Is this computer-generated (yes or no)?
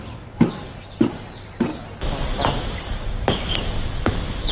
no